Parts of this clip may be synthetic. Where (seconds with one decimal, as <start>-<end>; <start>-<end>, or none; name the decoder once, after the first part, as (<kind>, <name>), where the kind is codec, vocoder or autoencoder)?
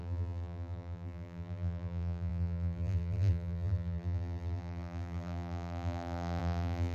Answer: 0.0-6.9 (vocoder, BigVGAN v2)